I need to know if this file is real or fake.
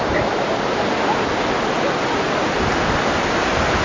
real